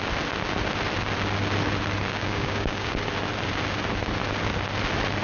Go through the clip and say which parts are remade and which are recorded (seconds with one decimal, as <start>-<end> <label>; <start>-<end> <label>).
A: 0.0-2.1 recorded; 2.1-2.9 remade; 2.9-5.2 recorded